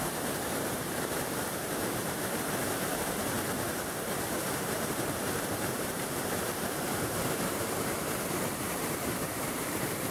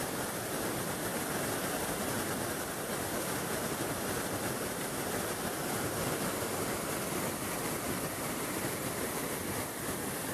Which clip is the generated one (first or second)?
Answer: first